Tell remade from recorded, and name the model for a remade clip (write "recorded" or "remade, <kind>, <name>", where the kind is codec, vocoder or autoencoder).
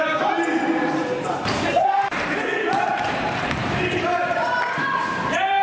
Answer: remade, vocoder, BigVGAN v2